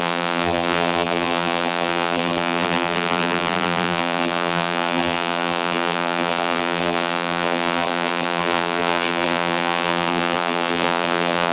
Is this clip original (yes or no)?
no